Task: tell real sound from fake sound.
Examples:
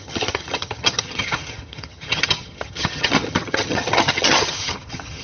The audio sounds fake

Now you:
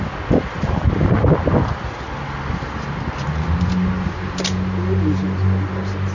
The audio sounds real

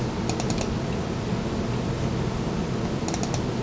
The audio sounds real